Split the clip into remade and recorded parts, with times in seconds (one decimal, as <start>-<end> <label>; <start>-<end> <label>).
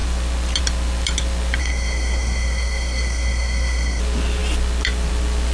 0.0-1.6 recorded; 1.6-4.0 remade; 4.0-5.5 recorded